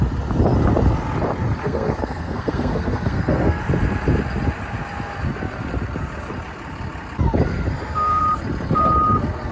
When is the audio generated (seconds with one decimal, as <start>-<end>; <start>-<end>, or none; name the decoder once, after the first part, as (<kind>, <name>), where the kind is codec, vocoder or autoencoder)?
1.6-3.6 (codec, SNAC); 7.5-8.2